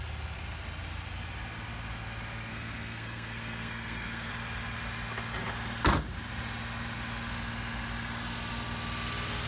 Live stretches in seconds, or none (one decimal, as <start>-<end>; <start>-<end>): 0.0-2.5; 4.3-9.5